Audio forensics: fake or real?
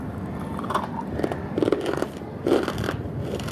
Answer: real